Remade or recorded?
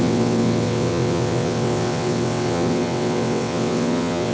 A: remade